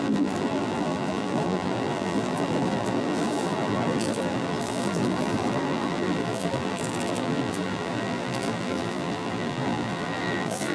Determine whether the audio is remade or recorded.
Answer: remade